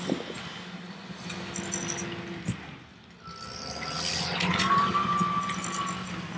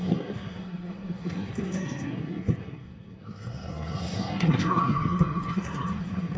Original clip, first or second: first